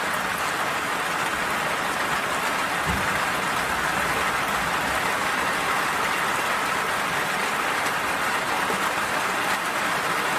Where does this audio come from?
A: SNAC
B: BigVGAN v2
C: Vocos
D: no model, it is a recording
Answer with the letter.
D